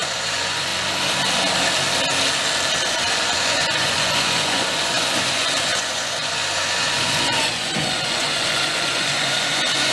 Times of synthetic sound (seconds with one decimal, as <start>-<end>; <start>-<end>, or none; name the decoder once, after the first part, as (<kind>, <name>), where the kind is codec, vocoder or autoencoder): 0.0-0.7 (vocoder, Vocos); 2.9-9.9